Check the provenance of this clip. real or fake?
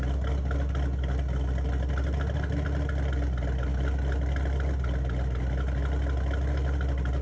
real